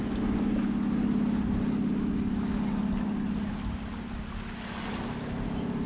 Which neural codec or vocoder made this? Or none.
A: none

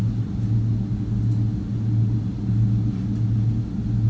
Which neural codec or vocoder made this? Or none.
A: none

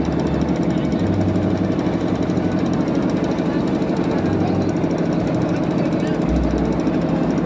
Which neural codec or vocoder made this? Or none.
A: none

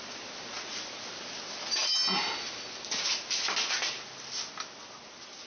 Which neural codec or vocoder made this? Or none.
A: none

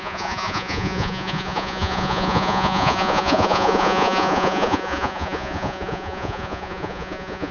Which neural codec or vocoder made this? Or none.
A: vocoder, Vocos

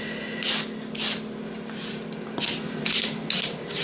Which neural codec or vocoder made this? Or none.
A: none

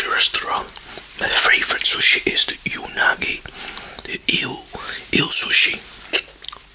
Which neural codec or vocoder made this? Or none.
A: none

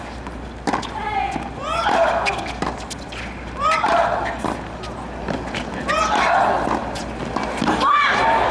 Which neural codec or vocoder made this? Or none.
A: none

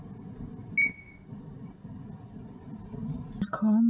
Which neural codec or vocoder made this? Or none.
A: none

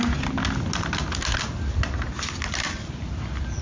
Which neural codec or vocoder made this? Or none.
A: none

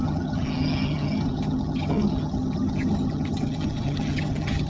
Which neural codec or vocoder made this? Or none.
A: vocoder, HiFi-GAN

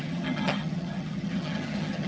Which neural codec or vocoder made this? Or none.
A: vocoder, HiFi-GAN